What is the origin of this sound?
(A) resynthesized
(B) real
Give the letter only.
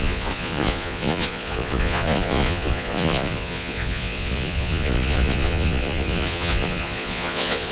A